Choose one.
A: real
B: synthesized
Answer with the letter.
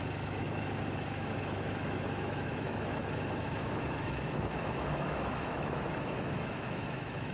B